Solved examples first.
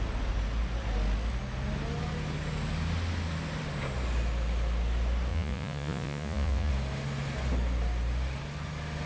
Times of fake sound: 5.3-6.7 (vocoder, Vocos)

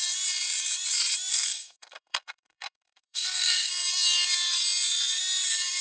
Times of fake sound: 1.3-3.7 (codec, SNAC)

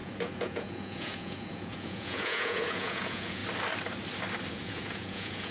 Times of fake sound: 0.0-3.4 (vocoder, Vocos); 4.5-5.5

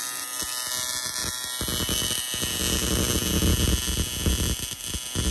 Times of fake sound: none